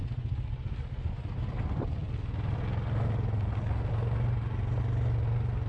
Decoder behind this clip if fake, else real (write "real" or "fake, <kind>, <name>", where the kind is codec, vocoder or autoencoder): real